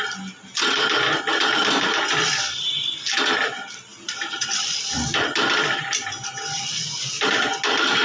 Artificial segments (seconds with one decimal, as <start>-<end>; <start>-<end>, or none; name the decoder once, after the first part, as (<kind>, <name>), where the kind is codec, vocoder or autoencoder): none